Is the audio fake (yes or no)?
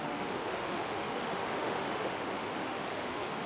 yes